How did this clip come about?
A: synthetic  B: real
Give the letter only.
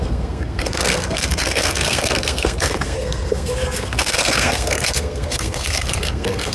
A